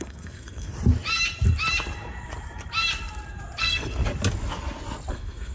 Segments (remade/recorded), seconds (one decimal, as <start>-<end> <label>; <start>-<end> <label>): 0.0-0.7 remade; 0.7-3.6 recorded; 3.6-4.0 remade; 4.0-5.1 recorded; 5.1-5.5 remade